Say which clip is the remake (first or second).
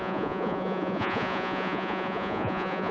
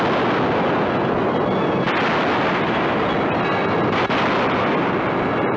first